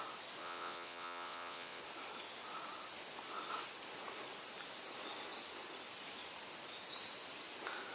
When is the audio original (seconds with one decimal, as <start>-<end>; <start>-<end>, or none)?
0.0-0.4; 1.8-7.9